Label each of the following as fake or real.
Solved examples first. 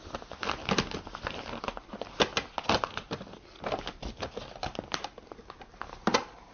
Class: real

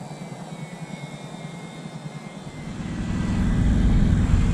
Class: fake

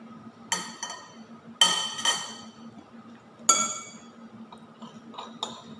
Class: real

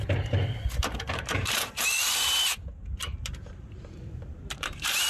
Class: fake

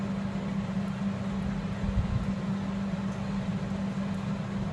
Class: real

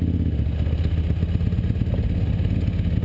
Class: real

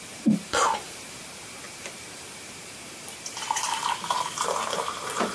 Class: fake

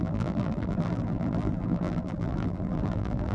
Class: fake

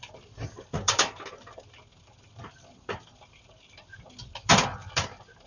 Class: fake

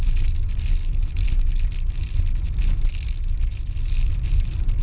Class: real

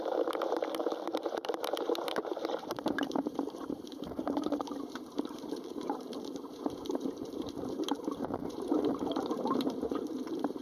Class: fake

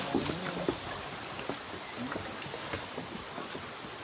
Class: real